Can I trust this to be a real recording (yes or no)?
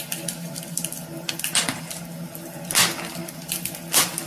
yes